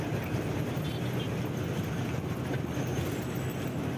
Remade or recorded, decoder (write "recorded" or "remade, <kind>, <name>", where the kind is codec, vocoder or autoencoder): recorded